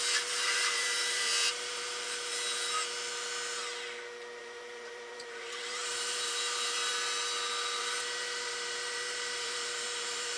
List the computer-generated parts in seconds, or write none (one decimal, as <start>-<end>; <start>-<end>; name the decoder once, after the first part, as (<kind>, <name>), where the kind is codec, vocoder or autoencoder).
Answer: 0.0-2.3 (vocoder, BigVGAN v2); 4.4-6.9; 7.8-10.4